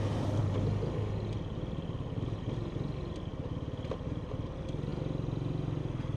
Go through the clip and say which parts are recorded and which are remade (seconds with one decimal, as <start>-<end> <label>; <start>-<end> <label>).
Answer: 0.0-6.2 recorded